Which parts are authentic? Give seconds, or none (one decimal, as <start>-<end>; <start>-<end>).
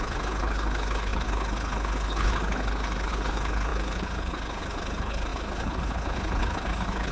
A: none